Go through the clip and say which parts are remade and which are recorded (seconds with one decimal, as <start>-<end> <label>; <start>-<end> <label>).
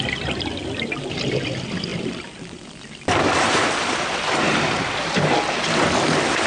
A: 0.0-6.5 recorded